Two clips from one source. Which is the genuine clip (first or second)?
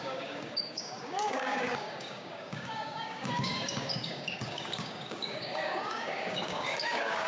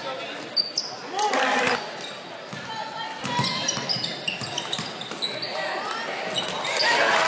second